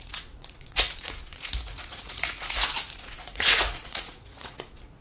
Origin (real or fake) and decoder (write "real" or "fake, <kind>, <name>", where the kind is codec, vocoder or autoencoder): fake, vocoder, Vocos